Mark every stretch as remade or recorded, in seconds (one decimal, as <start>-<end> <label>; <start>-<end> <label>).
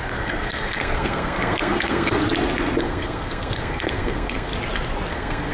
0.0-2.2 remade; 2.2-2.8 recorded; 2.8-4.5 remade; 4.5-5.1 recorded; 5.1-5.5 remade